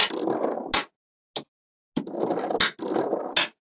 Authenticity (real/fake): real